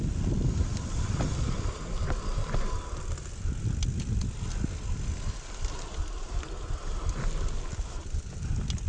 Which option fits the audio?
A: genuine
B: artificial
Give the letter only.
A